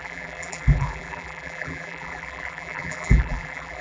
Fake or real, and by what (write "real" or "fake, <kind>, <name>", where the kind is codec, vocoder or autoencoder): fake, vocoder, BigVGAN v2